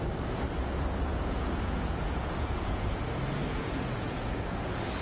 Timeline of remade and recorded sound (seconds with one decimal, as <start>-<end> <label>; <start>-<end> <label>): 0.0-1.1 recorded; 1.1-3.0 remade; 3.0-3.4 recorded; 3.4-4.4 remade; 4.4-5.0 recorded